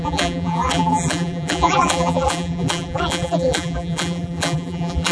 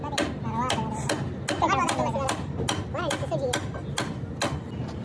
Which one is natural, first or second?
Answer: second